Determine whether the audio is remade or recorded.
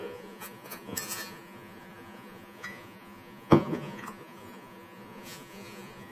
remade